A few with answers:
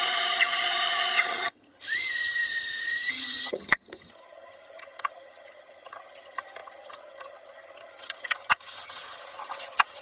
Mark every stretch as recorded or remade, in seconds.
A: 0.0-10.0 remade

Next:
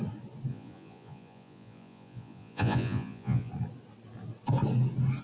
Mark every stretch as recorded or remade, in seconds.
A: 0.0-0.5 recorded; 0.5-3.5 remade; 3.5-5.2 recorded

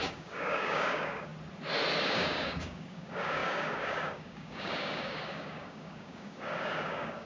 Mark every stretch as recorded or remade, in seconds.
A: 0.0-1.3 remade; 1.3-2.0 recorded; 2.0-7.3 remade

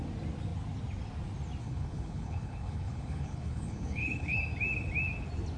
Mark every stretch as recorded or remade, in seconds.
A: 0.0-1.6 recorded; 1.6-4.4 remade; 4.4-5.6 recorded